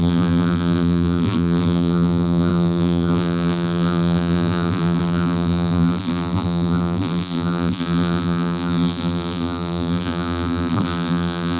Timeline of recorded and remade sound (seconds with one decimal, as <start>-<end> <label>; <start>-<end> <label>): 0.0-11.6 remade

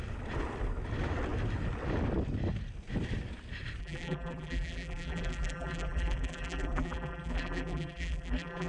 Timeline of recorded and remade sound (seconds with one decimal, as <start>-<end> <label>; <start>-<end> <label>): 0.0-3.8 recorded; 3.8-8.7 remade